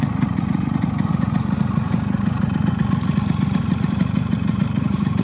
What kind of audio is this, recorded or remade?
remade